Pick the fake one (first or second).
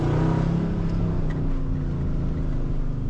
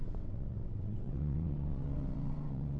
second